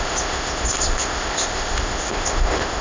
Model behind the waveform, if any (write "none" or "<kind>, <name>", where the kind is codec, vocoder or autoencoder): codec, ZipCodec